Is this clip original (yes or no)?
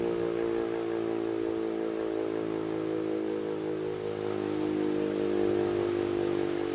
yes